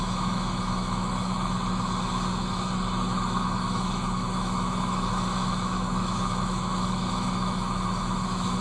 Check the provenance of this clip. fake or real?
fake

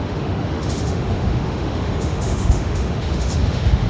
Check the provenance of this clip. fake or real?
fake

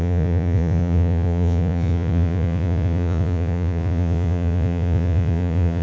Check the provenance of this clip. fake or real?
fake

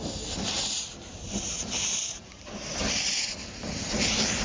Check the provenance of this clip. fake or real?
real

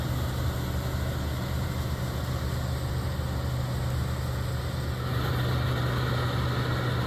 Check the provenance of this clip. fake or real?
real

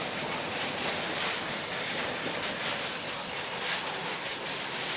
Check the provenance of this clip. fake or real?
real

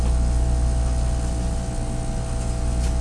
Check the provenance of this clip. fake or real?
real